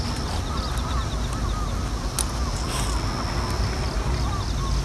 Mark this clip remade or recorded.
recorded